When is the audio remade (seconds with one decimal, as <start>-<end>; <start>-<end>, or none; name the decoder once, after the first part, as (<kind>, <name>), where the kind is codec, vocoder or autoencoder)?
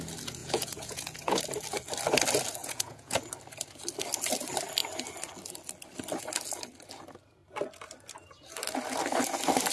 0.4-1.4 (vocoder, Vocos); 2.6-3.2